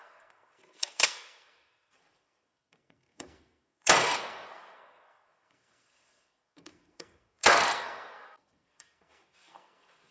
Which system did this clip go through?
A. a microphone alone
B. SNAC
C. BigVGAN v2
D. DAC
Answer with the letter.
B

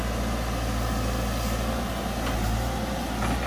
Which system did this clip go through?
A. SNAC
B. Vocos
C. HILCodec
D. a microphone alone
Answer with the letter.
D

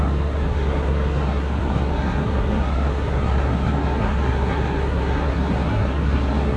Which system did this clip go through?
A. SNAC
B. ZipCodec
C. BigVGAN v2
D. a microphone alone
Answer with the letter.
A